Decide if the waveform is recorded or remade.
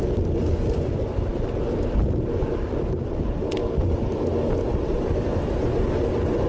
recorded